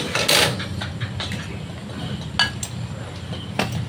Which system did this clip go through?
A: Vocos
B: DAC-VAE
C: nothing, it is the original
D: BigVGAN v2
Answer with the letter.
C